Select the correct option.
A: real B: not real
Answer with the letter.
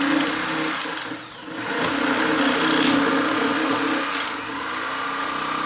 A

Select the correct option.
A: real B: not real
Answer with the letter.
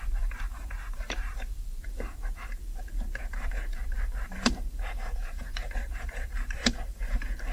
B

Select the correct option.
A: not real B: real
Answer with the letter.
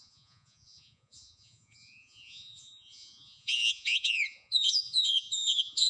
A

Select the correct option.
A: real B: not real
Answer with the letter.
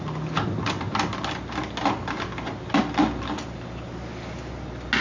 A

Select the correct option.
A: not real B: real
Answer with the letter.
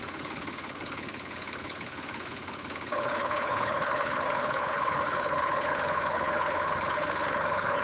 A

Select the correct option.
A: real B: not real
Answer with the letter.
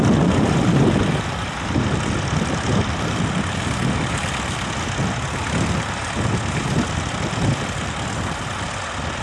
A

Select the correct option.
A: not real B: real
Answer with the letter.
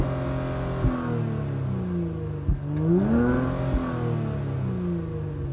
B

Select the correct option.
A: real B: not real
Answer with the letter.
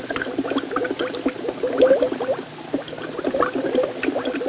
A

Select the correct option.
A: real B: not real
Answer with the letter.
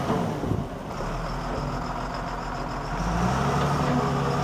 A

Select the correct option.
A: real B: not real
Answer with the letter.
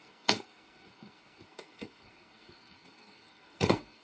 B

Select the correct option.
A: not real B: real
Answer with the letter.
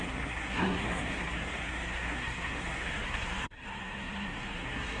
A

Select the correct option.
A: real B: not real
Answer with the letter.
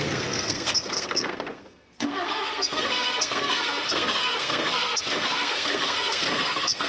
B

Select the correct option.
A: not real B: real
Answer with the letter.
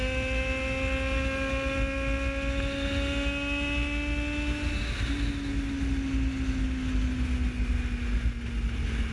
B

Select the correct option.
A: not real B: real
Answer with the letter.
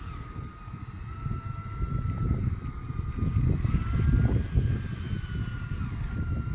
B